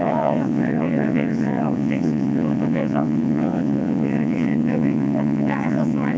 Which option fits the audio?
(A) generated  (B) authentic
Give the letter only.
A